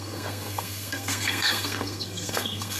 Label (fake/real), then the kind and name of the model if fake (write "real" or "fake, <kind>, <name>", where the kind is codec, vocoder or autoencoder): fake, codec, SNAC